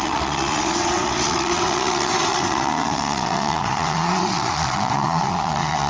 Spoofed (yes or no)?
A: yes